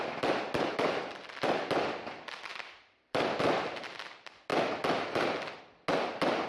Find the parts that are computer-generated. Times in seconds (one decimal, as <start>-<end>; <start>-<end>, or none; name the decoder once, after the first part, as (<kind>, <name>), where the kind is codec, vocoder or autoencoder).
2.5-3.4 (vocoder, BigVGAN v2)